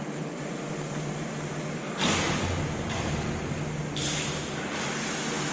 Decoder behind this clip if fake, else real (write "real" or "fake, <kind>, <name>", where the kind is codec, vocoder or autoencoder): real